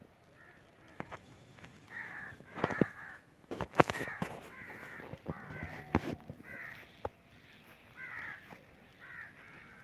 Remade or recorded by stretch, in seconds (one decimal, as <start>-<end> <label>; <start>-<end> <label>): 0.0-0.9 recorded; 0.9-5.0 remade; 5.0-9.8 recorded